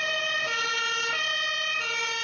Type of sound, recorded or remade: recorded